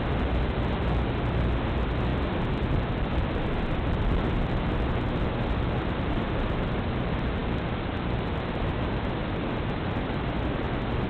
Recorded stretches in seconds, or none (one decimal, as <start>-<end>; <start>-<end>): 0.0-11.1